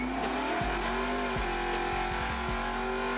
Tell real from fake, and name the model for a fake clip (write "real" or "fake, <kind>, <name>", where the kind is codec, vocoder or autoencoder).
real